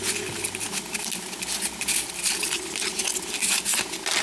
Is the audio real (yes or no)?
yes